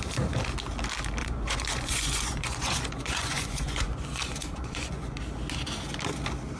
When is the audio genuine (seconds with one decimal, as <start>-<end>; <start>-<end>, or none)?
0.0-1.2; 5.2-6.6